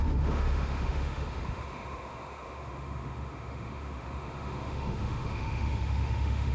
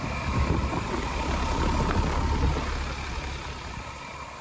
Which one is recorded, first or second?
second